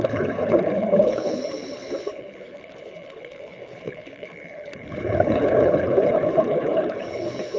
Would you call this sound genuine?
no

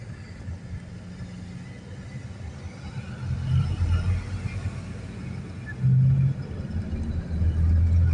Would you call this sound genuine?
yes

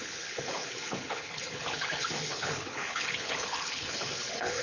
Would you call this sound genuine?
no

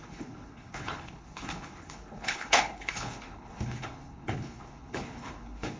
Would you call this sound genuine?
no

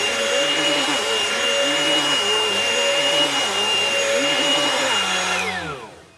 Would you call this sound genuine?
yes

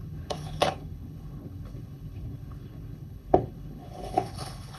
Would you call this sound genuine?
no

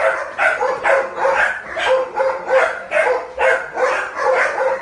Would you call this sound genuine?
yes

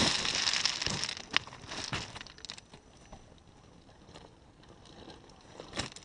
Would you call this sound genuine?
yes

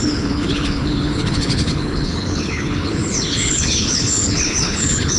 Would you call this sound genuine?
no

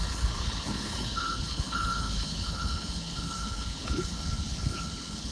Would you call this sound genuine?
no